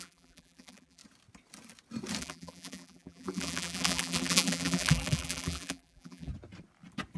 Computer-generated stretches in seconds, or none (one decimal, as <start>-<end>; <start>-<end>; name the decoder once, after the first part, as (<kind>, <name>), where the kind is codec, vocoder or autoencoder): 0.0-1.0 (vocoder, BigVGAN v2); 2.2-6.3